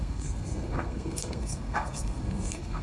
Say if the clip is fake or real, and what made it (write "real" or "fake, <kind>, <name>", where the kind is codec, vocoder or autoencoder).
fake, codec, SNAC